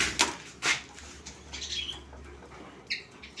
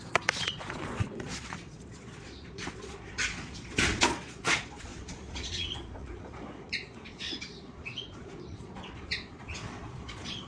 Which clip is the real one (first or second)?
first